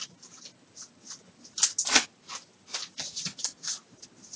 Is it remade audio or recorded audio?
recorded